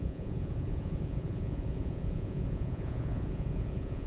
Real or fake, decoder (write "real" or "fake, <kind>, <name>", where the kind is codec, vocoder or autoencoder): fake, vocoder, Vocos